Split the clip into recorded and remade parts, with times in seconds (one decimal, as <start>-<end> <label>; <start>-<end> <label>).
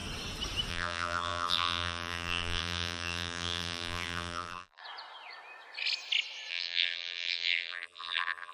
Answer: 0.0-0.7 recorded; 0.7-4.8 remade; 4.8-6.5 recorded; 6.5-8.5 remade